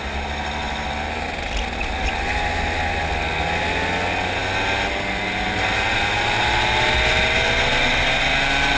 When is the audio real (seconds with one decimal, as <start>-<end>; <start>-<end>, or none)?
0.0-8.8